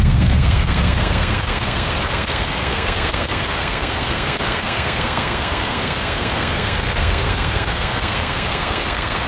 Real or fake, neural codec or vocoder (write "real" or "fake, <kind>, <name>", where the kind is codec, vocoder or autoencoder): fake, codec, SNAC